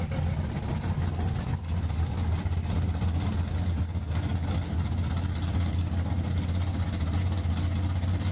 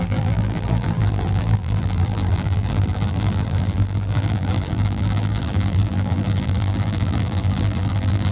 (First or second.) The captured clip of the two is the first